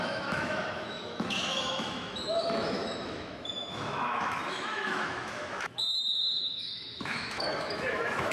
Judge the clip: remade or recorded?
remade